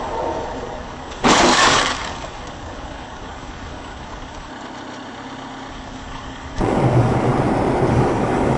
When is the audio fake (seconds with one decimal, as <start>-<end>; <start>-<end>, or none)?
0.0-4.5; 5.7-7.3; 7.9-8.6

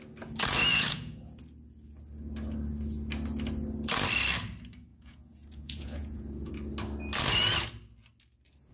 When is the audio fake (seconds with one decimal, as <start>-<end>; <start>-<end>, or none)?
0.7-1.4; 4.9-6.5

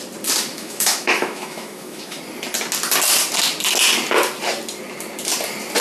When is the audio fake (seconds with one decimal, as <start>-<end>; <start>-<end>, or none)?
0.5-2.2

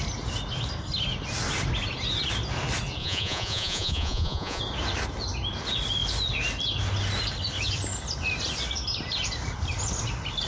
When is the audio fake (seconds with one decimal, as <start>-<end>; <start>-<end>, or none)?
3.0-4.6

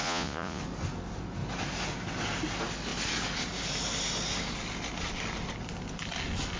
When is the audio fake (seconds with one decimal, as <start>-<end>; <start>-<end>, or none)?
0.0-0.6